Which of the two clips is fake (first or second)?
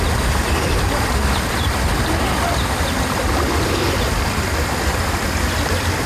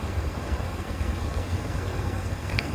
second